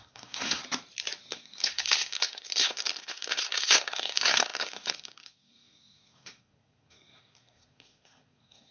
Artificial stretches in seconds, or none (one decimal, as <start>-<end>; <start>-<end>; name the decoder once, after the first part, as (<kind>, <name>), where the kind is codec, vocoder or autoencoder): 0.0-0.6 (codec, SNAC); 1.3-8.7